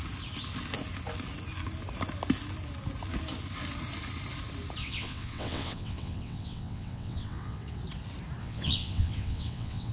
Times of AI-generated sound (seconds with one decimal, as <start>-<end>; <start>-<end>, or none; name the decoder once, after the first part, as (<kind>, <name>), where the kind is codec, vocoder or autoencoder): 4.8-7.8 (vocoder, WaveNeXt); 8.4-9.9